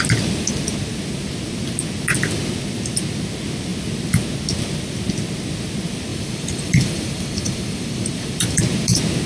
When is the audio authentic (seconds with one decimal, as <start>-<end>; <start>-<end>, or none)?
0.0-6.1; 8.6-9.3